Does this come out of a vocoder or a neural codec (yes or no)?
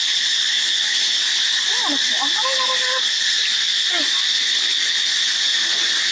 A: no